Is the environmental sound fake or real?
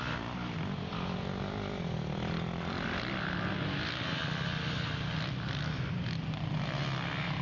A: real